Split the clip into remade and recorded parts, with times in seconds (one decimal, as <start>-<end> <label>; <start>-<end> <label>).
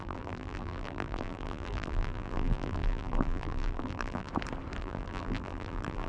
0.0-4.3 remade; 4.3-4.8 recorded; 4.8-6.1 remade